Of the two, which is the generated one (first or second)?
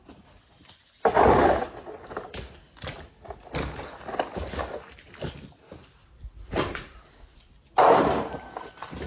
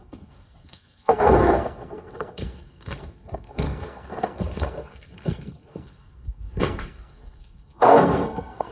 second